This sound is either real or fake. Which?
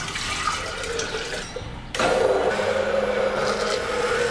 real